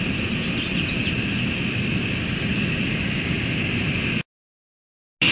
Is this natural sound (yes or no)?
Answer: yes